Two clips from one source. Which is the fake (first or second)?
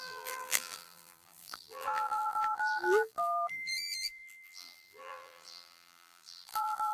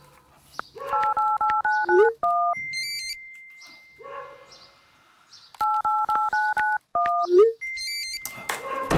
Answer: first